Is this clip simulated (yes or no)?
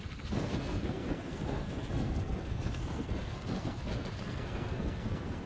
yes